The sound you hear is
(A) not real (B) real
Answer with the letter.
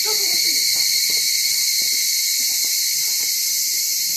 B